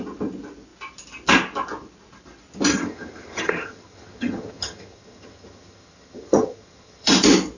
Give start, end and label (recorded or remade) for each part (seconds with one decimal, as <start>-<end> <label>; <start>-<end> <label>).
0.0-2.7 recorded; 2.7-7.1 remade; 7.1-7.6 recorded